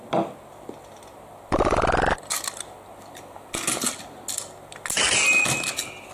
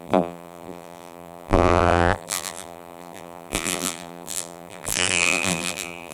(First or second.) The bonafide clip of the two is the first